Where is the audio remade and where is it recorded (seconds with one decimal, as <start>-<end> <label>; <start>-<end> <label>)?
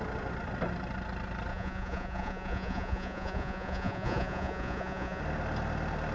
0.0-1.5 recorded; 1.5-5.2 remade; 5.2-6.1 recorded